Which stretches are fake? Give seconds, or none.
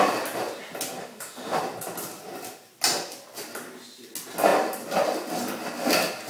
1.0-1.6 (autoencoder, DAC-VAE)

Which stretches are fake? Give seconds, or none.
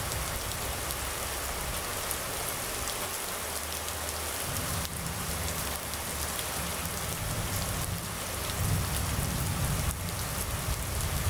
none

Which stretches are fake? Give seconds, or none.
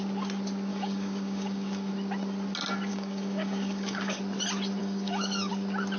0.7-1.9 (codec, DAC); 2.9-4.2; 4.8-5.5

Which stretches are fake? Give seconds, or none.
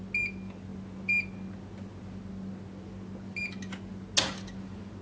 none